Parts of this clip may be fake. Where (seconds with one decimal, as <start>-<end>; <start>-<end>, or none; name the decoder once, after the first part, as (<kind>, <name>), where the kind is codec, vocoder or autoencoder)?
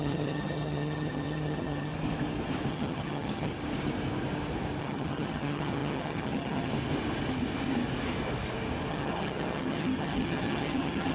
0.0-1.9 (vocoder, HiFi-GAN); 2.7-3.5; 4.8-6.7; 8.9-11.1